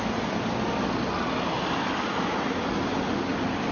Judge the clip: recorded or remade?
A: recorded